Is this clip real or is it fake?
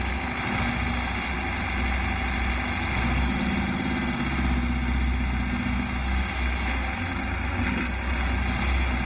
real